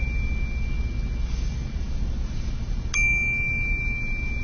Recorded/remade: recorded